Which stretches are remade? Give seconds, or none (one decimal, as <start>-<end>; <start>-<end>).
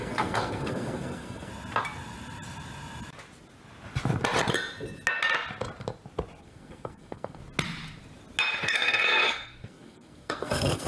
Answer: 0.0-1.5; 6.4-7.4; 8.6-10.9